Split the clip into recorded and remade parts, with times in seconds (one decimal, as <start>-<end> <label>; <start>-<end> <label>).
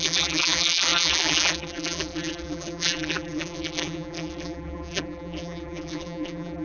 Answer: 0.0-6.6 remade